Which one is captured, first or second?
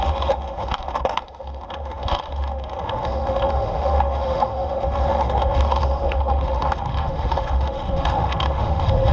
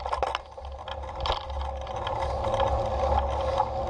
second